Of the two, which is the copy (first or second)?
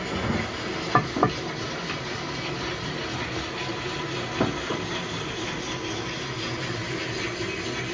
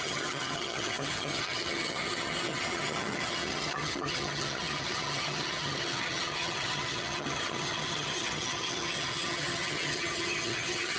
second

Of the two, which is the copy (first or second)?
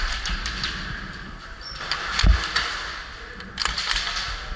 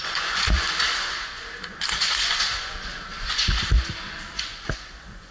second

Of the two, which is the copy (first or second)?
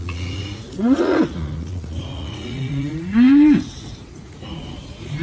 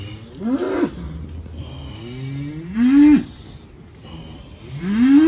first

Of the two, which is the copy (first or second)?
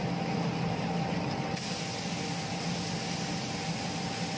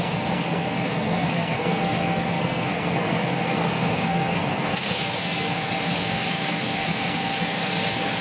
second